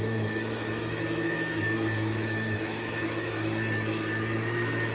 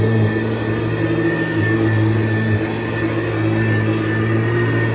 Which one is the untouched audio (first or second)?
second